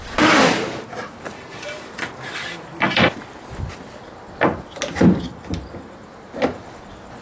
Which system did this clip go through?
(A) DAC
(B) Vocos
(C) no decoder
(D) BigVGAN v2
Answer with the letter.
C